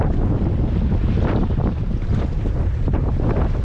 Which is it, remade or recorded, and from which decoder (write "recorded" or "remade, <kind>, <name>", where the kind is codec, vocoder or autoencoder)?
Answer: recorded